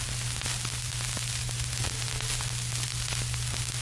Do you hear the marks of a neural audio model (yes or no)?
no